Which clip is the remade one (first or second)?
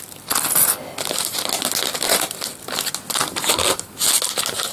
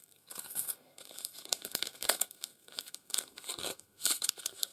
second